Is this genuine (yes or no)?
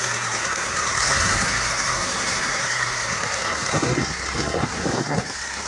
no